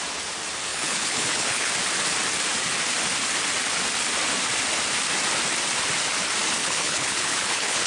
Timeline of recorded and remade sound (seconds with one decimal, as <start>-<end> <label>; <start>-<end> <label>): 0.0-0.7 recorded; 0.7-1.7 remade; 1.7-6.6 recorded; 6.6-7.9 remade